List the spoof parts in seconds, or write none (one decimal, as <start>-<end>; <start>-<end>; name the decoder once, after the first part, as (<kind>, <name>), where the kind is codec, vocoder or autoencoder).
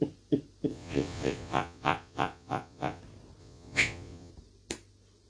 0.7-3.0 (vocoder, Vocos); 3.4-4.3